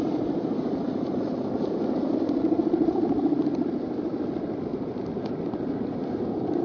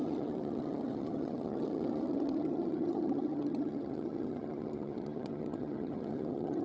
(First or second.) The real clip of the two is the first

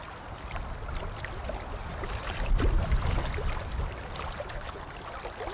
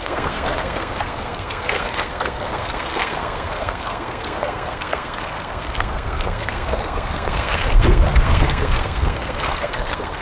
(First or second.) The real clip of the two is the first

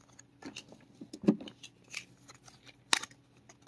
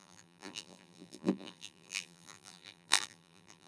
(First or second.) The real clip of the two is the first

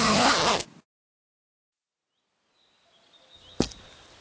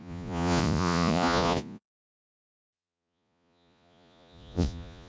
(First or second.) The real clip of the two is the first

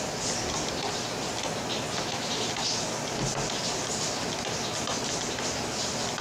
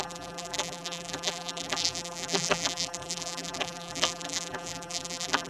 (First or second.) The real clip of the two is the first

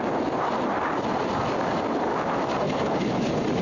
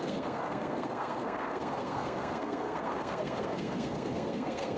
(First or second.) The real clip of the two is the first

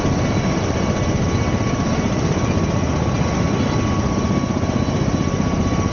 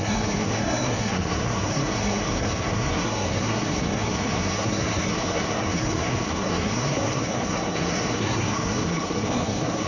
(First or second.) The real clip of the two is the first